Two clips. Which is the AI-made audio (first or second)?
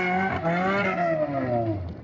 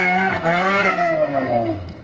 second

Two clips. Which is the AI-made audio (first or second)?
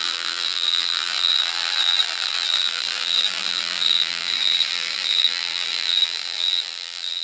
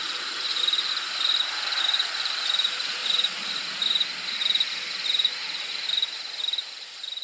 first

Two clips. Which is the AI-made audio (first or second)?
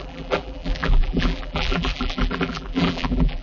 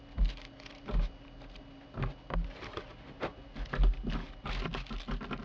first